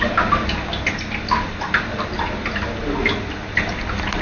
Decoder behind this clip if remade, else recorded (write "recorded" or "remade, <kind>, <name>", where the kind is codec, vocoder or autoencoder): recorded